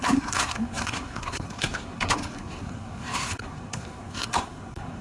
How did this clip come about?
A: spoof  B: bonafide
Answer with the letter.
A